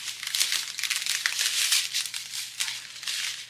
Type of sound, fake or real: real